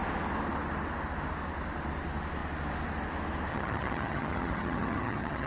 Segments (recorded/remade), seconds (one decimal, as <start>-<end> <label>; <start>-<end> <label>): 0.0-3.5 recorded; 3.5-5.5 remade